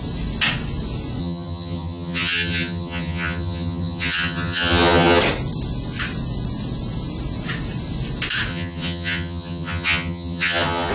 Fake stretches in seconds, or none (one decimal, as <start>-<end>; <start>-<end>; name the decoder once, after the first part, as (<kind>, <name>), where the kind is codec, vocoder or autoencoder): 1.2-5.2 (vocoder, HiFi-GAN); 8.5-10.9